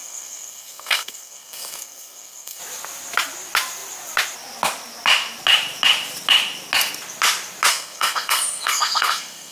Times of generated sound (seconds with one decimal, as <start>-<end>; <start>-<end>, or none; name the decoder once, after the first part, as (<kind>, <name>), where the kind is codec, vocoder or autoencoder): 0.0-2.6 (codec, SNAC); 7.7-9.5